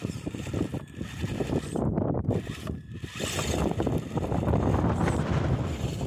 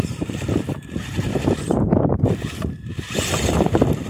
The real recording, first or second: first